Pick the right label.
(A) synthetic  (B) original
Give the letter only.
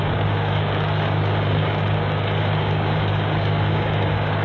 A